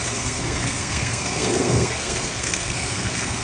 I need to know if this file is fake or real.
fake